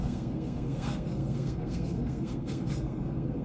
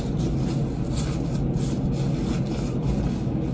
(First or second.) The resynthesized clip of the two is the first